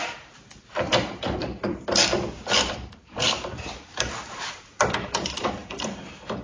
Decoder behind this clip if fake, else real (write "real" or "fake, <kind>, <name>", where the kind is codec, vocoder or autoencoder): fake, vocoder, BigVGAN v2